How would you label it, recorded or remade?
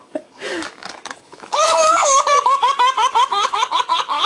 remade